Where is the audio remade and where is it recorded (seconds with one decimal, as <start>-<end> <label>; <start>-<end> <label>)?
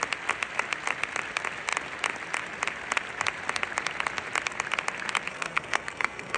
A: 0.0-5.3 recorded; 5.3-6.4 remade